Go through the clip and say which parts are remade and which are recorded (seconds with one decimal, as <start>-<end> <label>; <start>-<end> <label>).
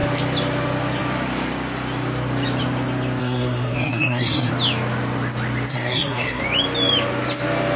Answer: 0.0-3.2 recorded; 3.2-4.5 remade; 4.5-5.7 recorded; 5.7-6.4 remade; 6.4-7.8 recorded